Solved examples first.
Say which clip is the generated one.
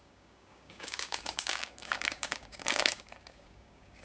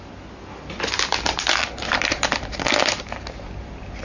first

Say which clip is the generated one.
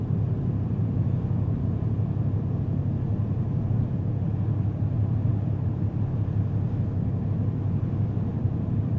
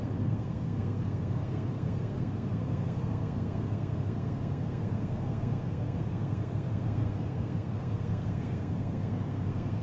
second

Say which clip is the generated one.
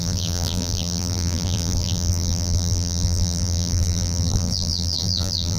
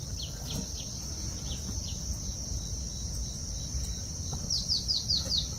first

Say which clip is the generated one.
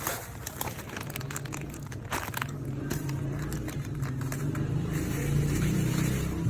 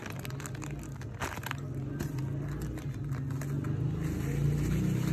first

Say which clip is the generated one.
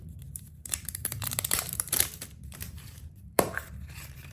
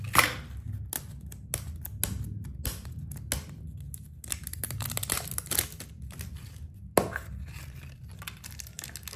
first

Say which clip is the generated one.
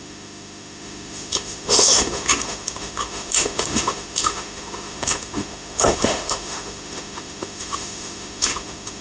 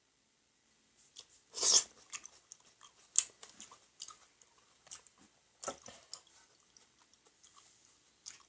first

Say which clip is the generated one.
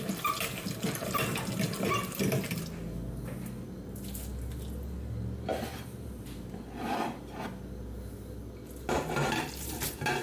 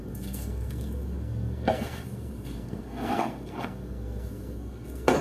second